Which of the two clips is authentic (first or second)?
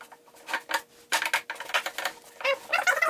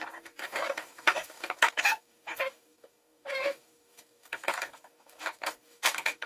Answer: first